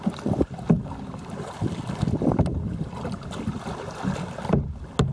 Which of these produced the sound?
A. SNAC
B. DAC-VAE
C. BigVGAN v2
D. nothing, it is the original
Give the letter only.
D